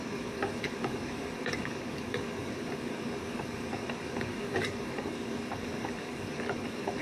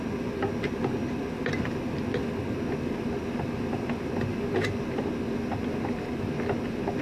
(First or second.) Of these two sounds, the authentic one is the second